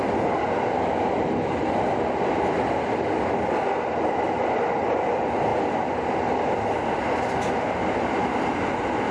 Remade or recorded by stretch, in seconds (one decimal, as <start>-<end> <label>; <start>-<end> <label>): 0.0-9.1 recorded